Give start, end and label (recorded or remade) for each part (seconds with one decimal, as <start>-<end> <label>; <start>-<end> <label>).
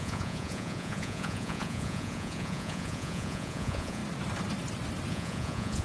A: 0.0-4.0 remade; 4.0-5.1 recorded; 5.1-5.8 remade